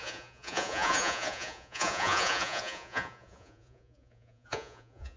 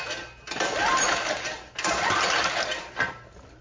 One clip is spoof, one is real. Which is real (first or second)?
second